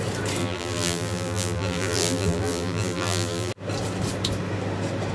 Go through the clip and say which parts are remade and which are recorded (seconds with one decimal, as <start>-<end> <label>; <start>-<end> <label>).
0.0-0.4 recorded; 0.4-3.5 remade; 3.5-5.1 recorded